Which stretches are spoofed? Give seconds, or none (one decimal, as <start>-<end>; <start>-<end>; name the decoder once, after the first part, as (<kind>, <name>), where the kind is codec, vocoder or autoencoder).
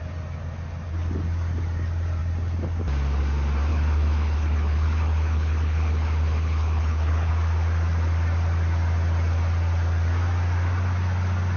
3.7-7.3 (codec, HILCodec)